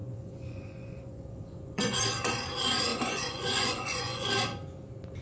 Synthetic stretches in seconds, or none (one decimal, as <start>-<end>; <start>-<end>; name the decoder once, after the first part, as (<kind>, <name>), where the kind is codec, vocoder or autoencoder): 0.0-2.0 (vocoder, Vocos); 2.9-4.3